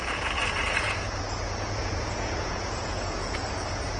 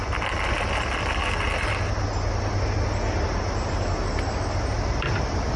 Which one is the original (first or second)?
second